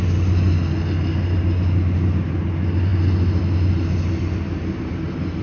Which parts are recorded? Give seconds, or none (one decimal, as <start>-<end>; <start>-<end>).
0.0-5.4